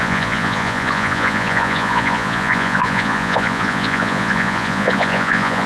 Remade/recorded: remade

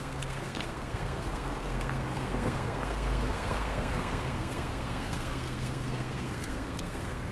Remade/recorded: remade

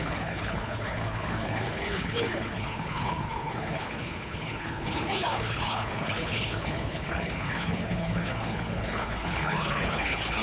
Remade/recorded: remade